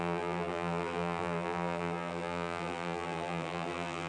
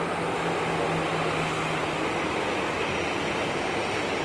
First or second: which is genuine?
second